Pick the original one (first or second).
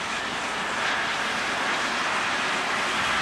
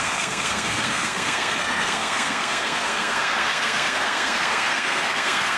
first